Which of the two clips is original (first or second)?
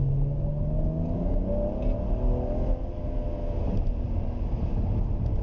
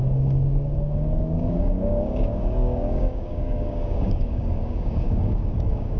first